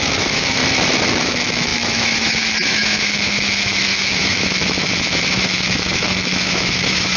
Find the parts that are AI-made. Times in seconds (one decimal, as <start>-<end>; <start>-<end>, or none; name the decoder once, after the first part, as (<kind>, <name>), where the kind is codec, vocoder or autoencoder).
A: 0.0-0.6 (autoencoder, DAC-VAE); 1.2-7.2